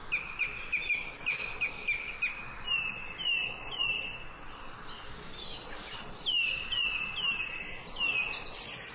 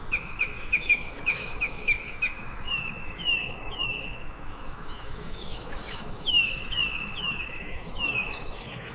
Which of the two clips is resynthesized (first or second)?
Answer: second